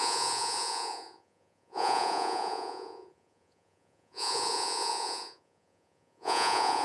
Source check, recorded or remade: remade